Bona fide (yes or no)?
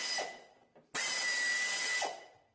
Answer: yes